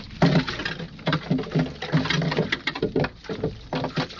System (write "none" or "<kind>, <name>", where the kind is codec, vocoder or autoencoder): none